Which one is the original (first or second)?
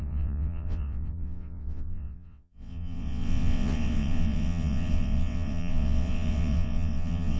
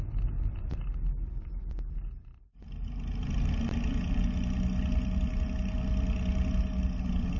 second